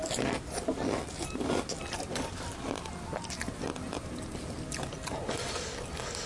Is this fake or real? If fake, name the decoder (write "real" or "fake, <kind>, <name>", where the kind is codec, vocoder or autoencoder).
real